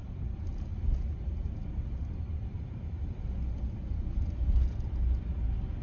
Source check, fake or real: real